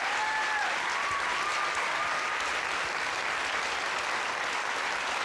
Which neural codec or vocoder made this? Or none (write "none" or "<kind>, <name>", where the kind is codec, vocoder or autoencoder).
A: none